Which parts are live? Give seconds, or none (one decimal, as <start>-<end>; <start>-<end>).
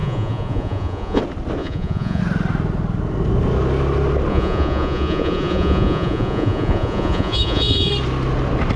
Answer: 1.2-1.6; 2.2-4.3; 7.9-8.8